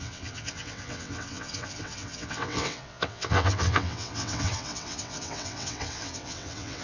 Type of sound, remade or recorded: remade